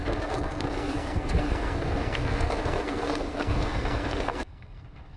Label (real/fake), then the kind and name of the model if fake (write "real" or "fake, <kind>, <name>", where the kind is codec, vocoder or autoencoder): fake, codec, SNAC